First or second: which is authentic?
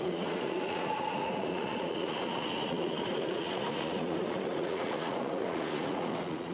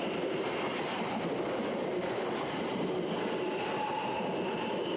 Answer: second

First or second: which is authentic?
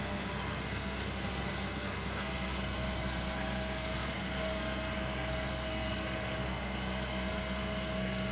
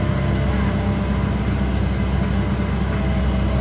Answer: second